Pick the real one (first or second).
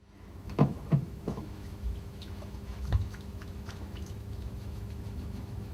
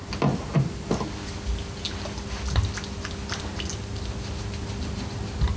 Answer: second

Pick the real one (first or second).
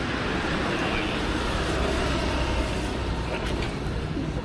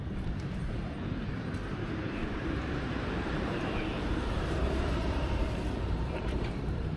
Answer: first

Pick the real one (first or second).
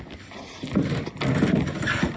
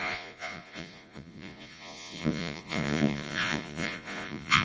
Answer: first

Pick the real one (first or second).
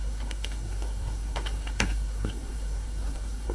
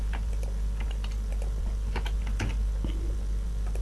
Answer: second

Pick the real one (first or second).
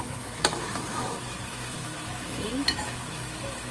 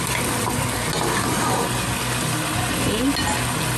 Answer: second